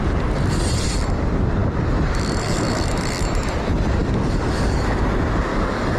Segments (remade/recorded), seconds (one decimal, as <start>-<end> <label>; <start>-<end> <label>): 0.0-4.0 recorded; 4.0-5.0 remade; 5.0-5.5 recorded; 5.5-6.0 remade